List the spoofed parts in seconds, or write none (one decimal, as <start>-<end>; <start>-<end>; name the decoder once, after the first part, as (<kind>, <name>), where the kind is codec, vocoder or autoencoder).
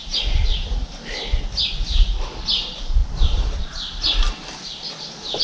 none